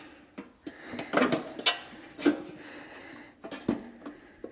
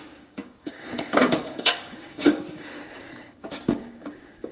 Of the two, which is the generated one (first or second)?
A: second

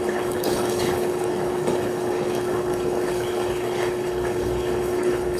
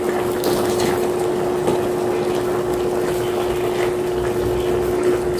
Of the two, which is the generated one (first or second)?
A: first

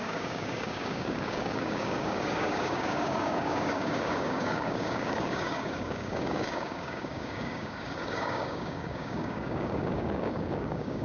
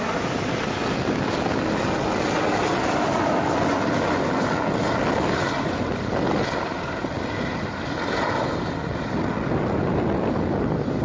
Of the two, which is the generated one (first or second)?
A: first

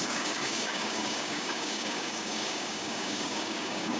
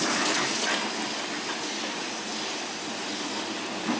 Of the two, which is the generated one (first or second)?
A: first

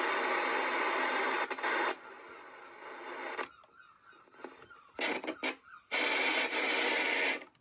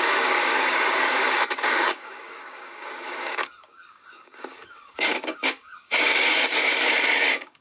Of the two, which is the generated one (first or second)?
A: second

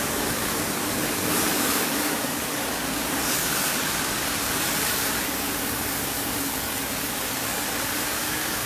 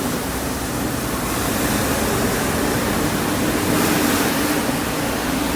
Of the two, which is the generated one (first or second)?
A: first